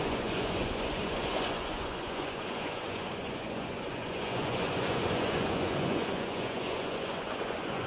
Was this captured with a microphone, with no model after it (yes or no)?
no